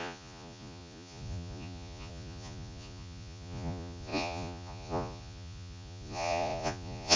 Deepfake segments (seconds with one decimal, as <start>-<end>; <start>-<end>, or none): 0.0-7.2